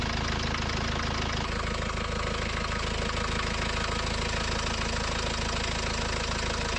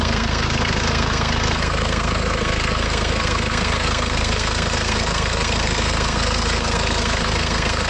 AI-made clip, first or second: second